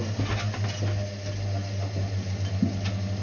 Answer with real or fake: real